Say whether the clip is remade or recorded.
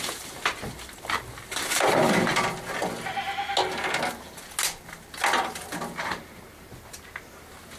recorded